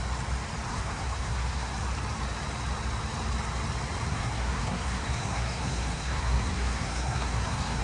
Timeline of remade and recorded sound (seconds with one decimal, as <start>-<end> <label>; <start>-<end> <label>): 0.0-0.7 recorded; 0.7-1.7 remade; 1.7-4.1 recorded; 4.1-7.8 remade